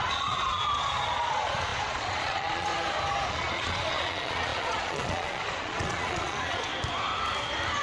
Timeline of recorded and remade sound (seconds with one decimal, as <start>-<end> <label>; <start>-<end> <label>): 0.0-2.7 remade; 2.7-3.3 recorded; 3.3-6.7 remade; 6.7-7.8 recorded